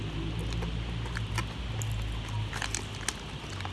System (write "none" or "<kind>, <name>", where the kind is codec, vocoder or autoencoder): none